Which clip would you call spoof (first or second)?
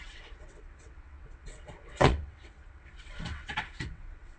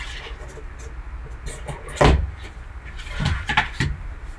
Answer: first